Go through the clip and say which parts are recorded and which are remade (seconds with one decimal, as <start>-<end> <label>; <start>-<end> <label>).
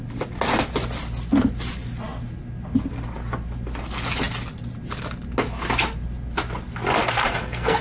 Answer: 0.0-7.0 recorded; 7.0-7.8 remade